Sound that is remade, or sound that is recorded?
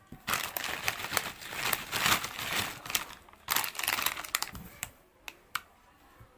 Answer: recorded